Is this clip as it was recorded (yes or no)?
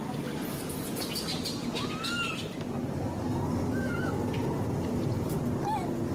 yes